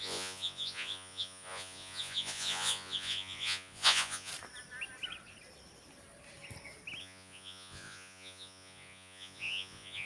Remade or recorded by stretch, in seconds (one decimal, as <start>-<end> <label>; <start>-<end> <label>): 0.0-4.3 remade; 4.3-7.0 recorded; 7.0-10.1 remade